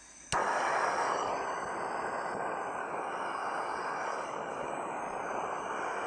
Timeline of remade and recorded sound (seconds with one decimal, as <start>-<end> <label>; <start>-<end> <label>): 0.0-0.4 recorded; 0.4-1.3 remade; 1.3-2.8 recorded; 2.8-5.0 remade; 5.0-6.1 recorded